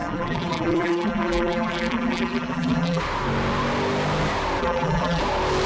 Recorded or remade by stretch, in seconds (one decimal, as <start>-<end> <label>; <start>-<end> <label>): 0.0-3.0 remade; 3.0-4.6 recorded; 4.6-5.2 remade; 5.2-5.7 recorded